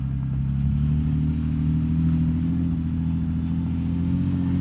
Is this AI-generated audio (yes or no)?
no